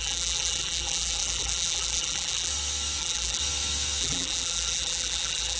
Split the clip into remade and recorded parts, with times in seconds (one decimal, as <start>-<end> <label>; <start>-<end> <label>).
0.0-2.5 remade; 2.5-3.0 recorded; 3.0-3.4 remade; 3.4-4.0 recorded; 4.0-5.6 remade